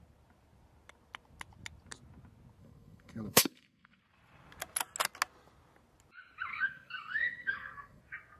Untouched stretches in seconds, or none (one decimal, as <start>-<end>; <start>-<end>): 0.0-2.6; 4.0-6.5; 8.0-8.4